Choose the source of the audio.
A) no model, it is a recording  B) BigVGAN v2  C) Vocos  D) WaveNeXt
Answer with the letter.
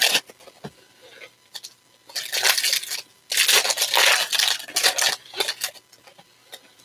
A